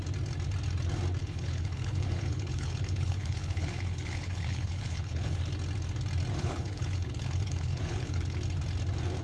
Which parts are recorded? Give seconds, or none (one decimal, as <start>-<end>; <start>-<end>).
0.0-1.2; 5.4-6.4; 8.4-9.2